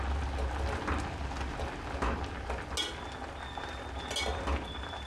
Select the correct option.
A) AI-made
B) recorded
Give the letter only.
B